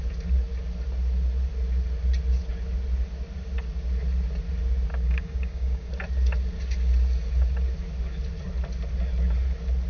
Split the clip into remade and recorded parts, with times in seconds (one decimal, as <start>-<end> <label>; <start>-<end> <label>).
0.0-4.9 recorded; 4.9-5.9 remade; 5.9-9.9 recorded